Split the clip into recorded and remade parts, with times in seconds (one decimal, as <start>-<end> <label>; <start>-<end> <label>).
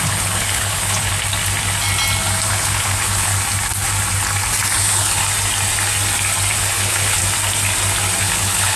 0.0-1.1 remade; 1.1-2.5 recorded; 2.5-3.3 remade; 3.3-4.8 recorded; 4.8-5.2 remade; 5.2-6.6 recorded; 6.6-7.2 remade; 7.2-8.2 recorded; 8.2-8.8 remade